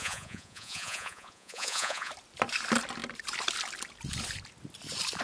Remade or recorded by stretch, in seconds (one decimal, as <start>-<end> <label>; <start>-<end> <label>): 0.0-2.1 remade; 2.1-5.2 recorded